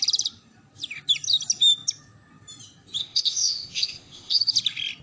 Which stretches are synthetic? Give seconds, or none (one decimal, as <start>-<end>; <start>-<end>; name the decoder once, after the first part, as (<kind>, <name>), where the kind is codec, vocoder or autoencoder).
3.0-4.4 (codec, ZipCodec)